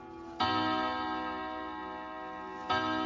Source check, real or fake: real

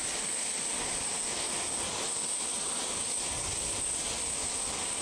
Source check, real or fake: real